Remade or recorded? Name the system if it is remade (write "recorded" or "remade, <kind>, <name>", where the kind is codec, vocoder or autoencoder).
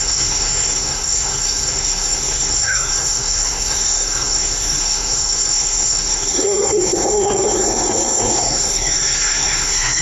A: remade, codec, SNAC